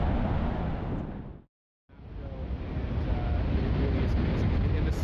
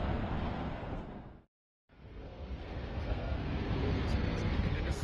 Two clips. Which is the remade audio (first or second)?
second